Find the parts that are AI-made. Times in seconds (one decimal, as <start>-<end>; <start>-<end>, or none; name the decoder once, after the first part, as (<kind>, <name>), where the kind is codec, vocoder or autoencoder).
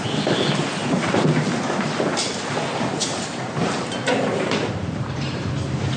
0.8-1.5 (vocoder, BigVGAN v2); 3.0-5.5